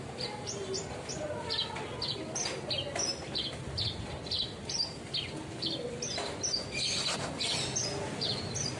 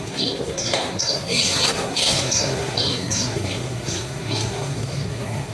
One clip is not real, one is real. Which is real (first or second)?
first